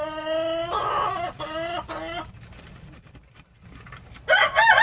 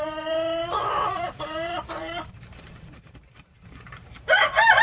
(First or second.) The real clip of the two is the first